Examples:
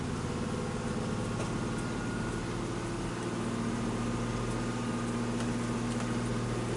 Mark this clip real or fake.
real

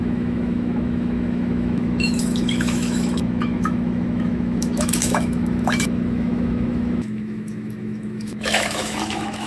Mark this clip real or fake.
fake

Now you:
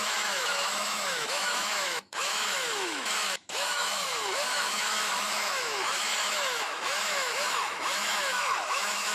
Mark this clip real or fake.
fake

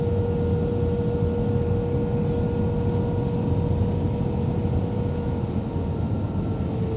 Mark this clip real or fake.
real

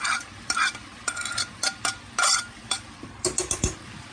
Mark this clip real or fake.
real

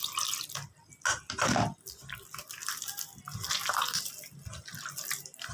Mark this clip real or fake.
real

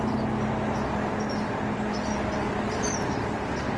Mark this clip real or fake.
real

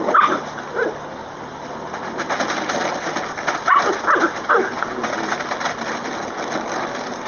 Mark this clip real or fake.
real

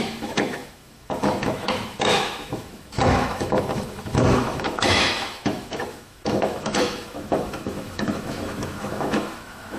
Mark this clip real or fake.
fake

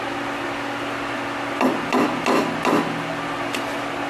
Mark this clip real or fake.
real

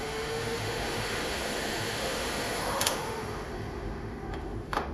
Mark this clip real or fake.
fake